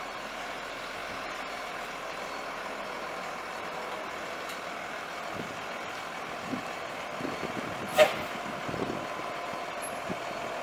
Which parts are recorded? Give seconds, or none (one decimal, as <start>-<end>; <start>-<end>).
0.0-10.6